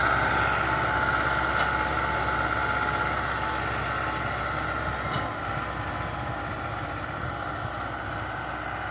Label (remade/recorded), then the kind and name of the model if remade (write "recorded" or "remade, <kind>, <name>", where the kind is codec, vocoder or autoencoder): recorded